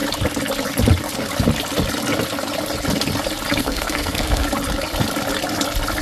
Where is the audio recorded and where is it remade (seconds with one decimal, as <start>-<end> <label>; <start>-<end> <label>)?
0.0-3.6 recorded; 3.6-4.5 remade; 4.5-6.0 recorded